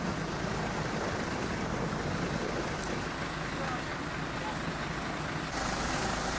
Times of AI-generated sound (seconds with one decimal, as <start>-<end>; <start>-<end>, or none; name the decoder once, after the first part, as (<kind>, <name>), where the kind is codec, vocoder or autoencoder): none